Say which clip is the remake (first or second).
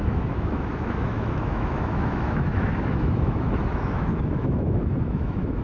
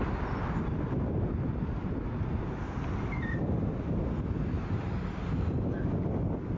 first